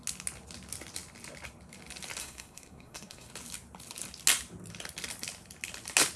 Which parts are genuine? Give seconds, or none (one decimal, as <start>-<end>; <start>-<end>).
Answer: 0.0-2.2; 3.3-6.2